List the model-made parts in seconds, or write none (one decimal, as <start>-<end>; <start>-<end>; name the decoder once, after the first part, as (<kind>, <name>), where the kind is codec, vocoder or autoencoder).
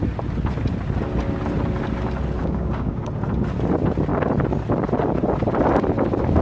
2.4-3.0 (codec, DAC)